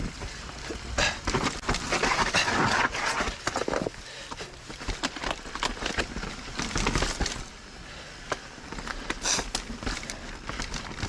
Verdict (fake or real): real